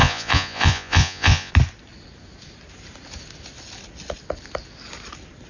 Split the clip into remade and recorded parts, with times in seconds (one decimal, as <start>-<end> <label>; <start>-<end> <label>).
0.0-1.5 remade; 1.5-5.5 recorded